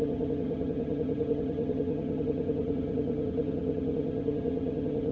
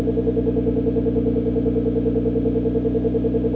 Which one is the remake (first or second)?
first